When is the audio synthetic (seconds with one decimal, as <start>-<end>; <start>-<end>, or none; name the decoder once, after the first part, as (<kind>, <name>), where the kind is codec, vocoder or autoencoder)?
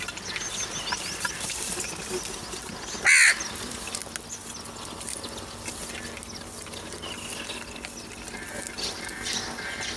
none